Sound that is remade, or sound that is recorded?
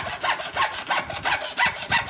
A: recorded